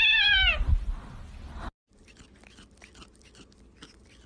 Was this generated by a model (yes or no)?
no